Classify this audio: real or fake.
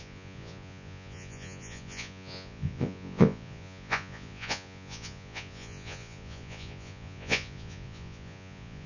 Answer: fake